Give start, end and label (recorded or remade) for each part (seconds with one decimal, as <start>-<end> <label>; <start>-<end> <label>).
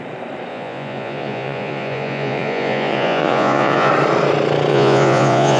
0.0-0.5 recorded; 0.5-3.9 remade; 3.9-4.7 recorded; 4.7-5.6 remade